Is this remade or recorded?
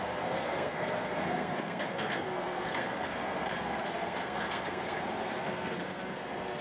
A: remade